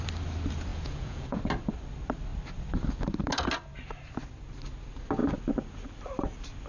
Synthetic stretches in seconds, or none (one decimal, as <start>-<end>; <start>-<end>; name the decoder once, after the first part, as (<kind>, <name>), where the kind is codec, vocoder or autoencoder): 0.7-1.4 (vocoder, Vocos)